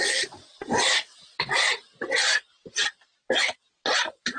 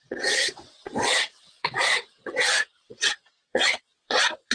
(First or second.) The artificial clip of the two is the second